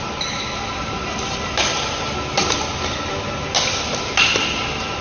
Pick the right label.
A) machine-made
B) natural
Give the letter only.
B